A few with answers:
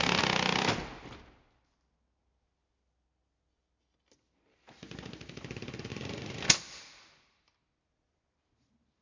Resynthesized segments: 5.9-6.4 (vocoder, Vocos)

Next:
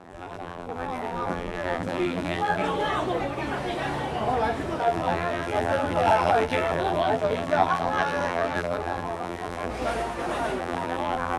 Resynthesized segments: 0.0-2.6 (vocoder, BigVGAN v2); 4.8-9.7; 10.6-11.4